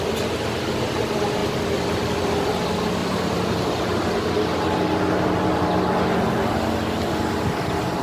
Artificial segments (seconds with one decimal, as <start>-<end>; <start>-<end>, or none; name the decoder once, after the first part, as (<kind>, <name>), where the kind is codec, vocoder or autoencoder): 3.0-6.5 (vocoder, BigVGAN v2)